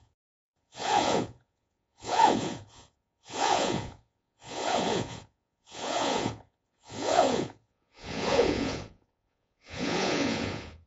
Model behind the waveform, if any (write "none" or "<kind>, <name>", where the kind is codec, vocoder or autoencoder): vocoder, Vocos